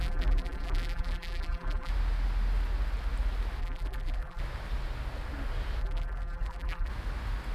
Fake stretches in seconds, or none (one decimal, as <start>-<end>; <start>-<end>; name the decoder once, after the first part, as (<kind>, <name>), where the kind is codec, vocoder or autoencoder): 0.0-1.9 (vocoder, BigVGAN v2); 3.6-4.4; 5.8-6.9